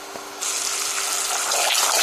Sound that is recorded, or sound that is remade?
recorded